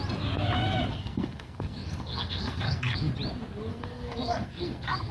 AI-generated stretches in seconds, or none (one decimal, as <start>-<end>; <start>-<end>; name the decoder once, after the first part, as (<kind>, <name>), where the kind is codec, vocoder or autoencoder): 0.9-3.1 (codec, SNAC); 3.7-5.1

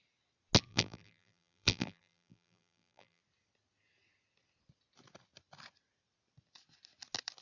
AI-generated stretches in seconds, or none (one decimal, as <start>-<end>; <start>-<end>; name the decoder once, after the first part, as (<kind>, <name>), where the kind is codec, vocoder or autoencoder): 0.7-3.2 (vocoder, BigVGAN v2)

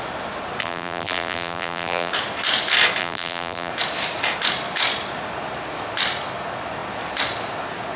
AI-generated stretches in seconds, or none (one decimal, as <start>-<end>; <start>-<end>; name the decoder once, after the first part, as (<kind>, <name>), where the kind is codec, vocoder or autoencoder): 0.6-2.1 (vocoder, BigVGAN v2); 3.0-3.7

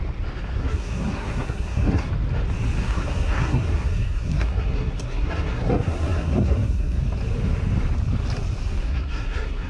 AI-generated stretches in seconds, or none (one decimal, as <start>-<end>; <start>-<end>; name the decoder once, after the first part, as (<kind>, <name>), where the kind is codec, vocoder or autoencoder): 0.6-2.1 (codec, SNAC); 2.8-7.0; 8.8-9.7

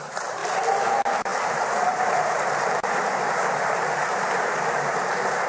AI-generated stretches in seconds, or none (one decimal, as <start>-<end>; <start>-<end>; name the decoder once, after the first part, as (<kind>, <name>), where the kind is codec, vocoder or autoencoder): 0.0-0.4 (vocoder, BigVGAN v2); 0.9-5.5